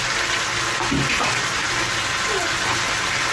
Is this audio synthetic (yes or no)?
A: no